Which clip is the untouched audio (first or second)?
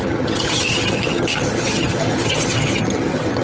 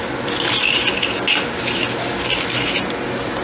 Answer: second